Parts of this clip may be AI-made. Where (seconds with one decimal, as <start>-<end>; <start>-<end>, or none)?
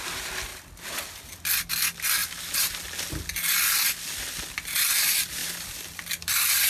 5.4-6.7